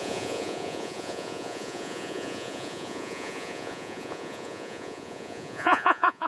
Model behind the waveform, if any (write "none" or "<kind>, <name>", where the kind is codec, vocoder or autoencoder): vocoder, Vocos